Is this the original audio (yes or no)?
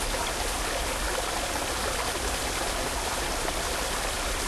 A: yes